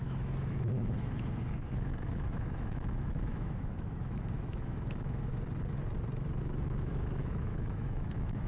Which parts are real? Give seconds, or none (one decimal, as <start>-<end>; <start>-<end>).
5.3-6.4